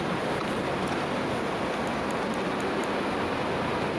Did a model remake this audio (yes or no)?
no